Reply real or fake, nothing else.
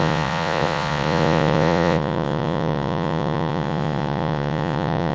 fake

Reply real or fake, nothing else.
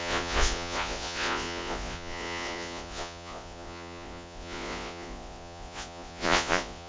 fake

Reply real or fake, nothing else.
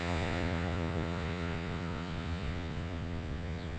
fake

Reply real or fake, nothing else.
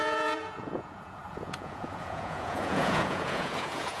fake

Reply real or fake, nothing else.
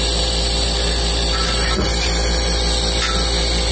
real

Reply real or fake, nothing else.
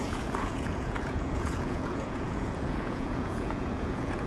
fake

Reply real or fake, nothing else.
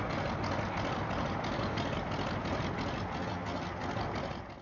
real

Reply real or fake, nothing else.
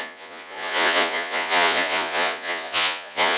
fake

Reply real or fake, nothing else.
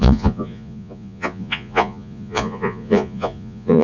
fake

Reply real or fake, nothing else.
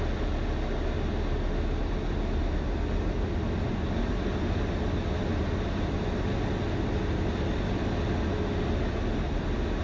real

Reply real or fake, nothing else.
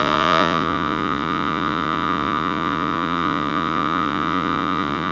fake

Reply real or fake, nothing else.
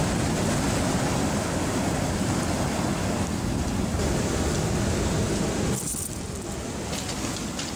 real